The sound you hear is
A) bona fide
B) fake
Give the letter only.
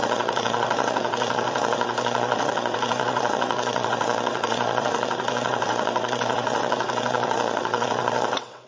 B